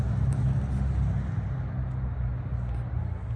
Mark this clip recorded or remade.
recorded